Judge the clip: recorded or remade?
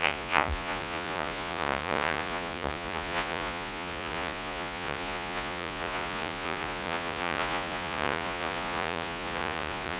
remade